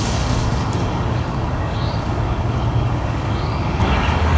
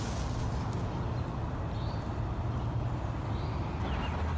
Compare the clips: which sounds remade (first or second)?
first